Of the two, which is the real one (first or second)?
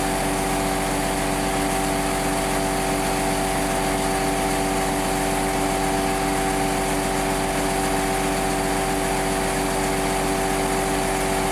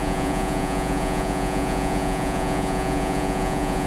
first